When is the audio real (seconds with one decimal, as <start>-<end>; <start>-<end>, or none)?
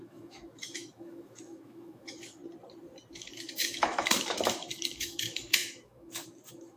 2.4-3.1